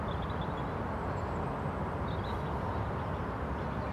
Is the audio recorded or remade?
recorded